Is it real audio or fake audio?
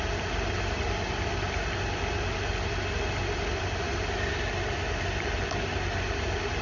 real